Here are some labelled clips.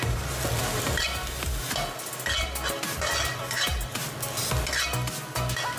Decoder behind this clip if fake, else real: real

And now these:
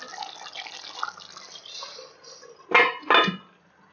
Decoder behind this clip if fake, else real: real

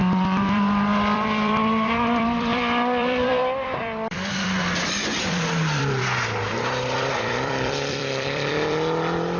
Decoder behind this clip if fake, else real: fake, vocoder, BigVGAN v2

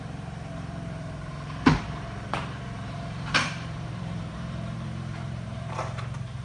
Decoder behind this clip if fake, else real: fake, vocoder, BigVGAN v2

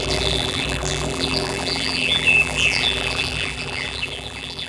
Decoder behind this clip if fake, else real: fake, vocoder, BigVGAN v2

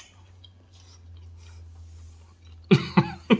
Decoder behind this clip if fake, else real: real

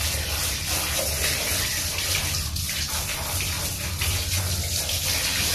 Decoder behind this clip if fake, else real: real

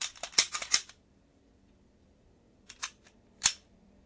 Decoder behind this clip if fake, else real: fake, vocoder, BigVGAN v2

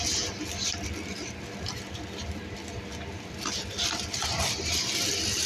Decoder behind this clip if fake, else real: real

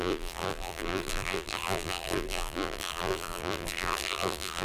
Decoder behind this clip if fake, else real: fake, vocoder, BigVGAN v2